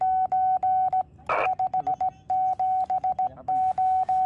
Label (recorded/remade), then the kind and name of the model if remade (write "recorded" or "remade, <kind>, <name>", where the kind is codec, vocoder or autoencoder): recorded